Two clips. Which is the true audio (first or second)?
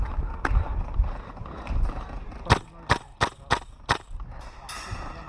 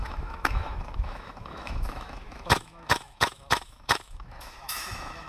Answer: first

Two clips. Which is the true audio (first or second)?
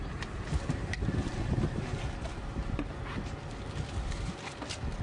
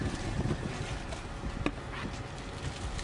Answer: second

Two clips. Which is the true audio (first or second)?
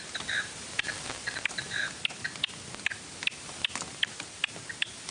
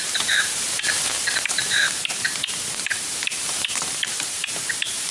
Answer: first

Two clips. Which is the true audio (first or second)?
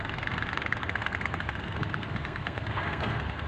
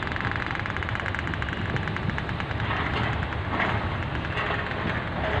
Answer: second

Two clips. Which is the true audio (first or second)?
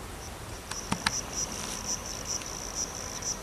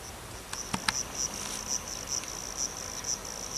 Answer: second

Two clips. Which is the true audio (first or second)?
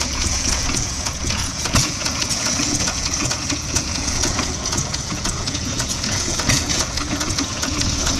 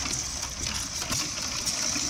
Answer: second